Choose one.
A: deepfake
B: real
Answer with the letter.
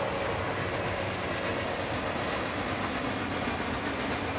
B